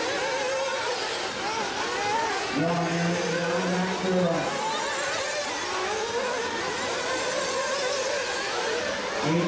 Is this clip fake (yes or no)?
no